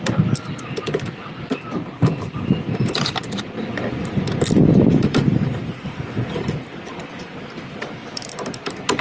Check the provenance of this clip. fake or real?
fake